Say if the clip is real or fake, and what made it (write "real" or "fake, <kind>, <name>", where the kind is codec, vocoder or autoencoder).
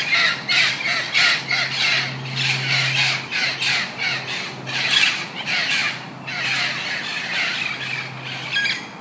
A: real